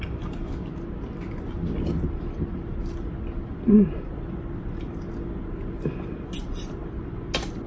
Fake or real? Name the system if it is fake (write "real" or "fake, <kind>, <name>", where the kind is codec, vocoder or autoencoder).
real